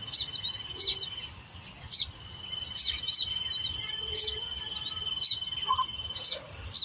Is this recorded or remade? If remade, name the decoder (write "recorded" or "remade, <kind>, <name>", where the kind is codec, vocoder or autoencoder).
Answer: recorded